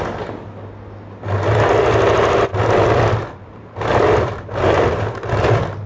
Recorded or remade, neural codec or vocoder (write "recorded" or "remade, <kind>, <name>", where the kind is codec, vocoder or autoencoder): recorded